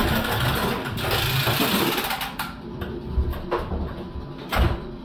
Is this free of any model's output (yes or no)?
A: yes